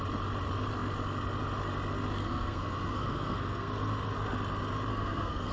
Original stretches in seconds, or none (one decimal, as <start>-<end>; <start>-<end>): 0.0-2.2; 3.7-4.9